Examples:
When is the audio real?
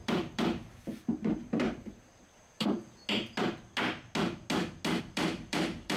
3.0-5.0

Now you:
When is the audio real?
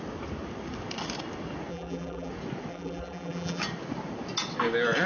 0.0-1.7; 2.3-2.7; 3.6-5.1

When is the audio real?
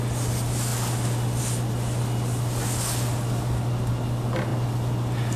0.0-5.4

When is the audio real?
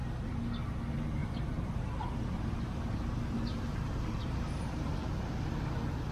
0.0-1.2; 4.9-6.1